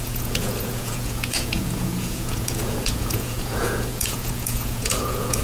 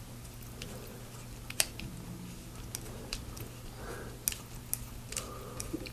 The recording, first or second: second